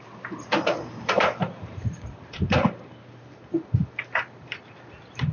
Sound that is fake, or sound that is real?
fake